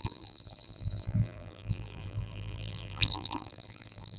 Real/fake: fake